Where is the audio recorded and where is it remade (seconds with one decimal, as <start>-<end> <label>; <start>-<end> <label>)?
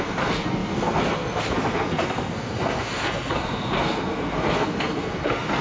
0.0-5.6 remade